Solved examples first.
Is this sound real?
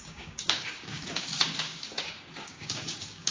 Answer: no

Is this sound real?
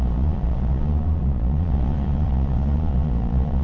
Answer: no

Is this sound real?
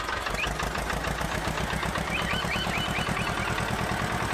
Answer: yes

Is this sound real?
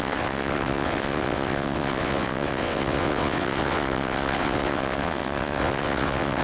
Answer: no